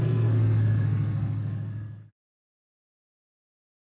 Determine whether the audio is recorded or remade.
remade